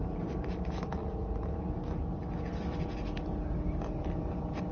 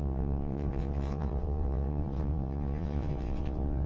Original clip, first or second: first